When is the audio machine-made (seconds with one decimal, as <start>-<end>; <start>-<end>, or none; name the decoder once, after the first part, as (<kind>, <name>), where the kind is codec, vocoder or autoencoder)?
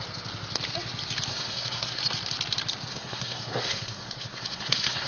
1.3-2.0 (codec, SNAC); 2.9-5.1